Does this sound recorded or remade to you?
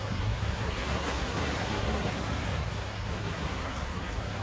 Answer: remade